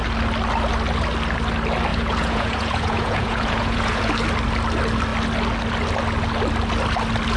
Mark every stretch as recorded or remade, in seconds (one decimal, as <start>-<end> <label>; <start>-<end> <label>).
0.0-1.9 recorded; 1.9-4.1 remade; 4.1-7.4 recorded